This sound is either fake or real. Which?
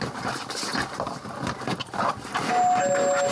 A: real